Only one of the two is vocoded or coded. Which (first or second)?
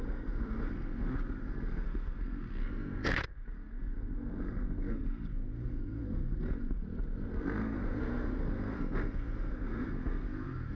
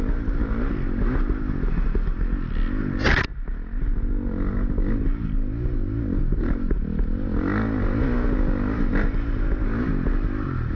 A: first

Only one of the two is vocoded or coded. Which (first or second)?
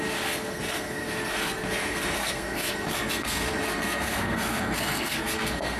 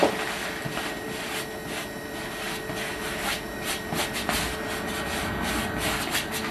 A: first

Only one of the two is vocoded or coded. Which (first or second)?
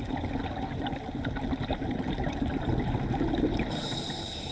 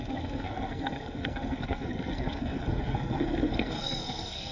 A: second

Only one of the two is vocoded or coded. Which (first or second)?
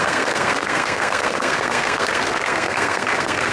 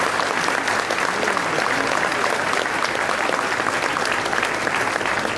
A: first